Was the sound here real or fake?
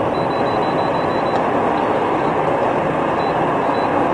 real